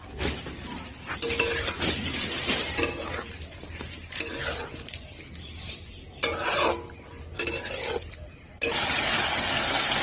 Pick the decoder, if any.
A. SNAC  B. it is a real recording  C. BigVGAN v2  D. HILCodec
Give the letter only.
B